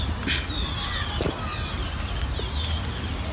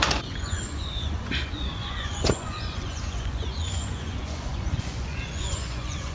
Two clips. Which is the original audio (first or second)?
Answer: first